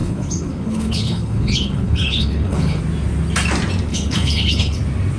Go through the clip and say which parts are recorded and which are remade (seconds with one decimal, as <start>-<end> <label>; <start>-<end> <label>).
0.0-2.8 remade; 2.8-3.9 recorded; 3.9-4.8 remade; 4.8-5.2 recorded